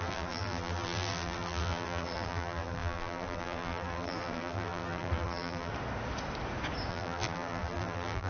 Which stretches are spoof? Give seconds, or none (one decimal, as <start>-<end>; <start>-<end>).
0.0-5.7; 6.9-8.3